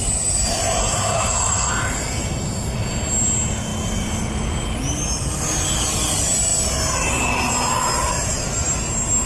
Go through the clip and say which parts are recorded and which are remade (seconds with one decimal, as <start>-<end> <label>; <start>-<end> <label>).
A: 0.0-0.8 recorded; 0.8-1.7 remade; 1.7-9.3 recorded

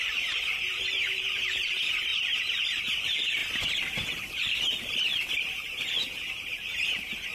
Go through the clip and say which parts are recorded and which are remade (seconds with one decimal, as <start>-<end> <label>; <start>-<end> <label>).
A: 0.0-2.1 remade; 2.1-2.9 recorded; 2.9-3.4 remade; 3.4-6.3 recorded; 6.3-7.3 remade